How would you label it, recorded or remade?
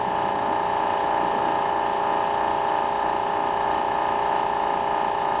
recorded